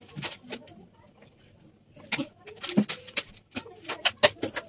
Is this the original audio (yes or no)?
yes